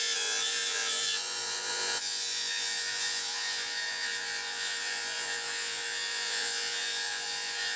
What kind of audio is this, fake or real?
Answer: fake